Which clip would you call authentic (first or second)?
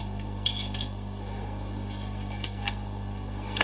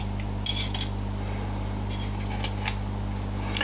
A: second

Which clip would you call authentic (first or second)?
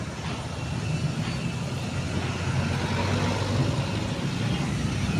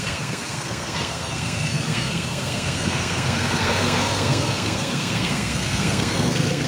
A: first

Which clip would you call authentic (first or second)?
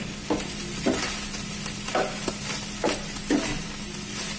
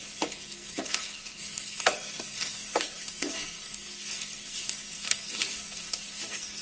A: first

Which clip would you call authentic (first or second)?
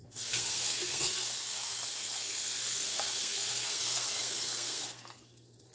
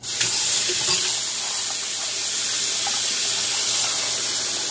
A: second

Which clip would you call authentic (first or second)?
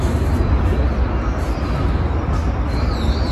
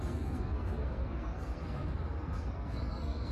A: first